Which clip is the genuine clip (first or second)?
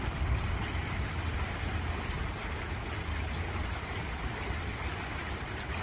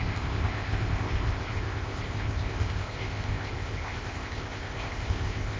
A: first